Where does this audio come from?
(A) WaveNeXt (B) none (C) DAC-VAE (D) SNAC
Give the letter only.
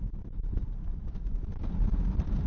B